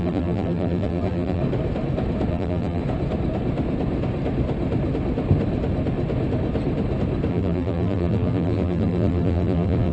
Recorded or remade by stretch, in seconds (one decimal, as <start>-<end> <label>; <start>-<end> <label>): 0.0-1.4 remade; 1.4-2.3 recorded; 2.3-2.8 remade; 2.8-7.3 recorded; 7.3-9.9 remade